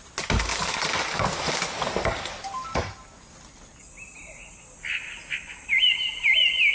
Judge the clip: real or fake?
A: real